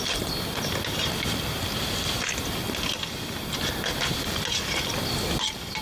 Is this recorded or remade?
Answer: recorded